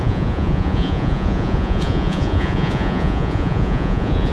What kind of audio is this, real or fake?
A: fake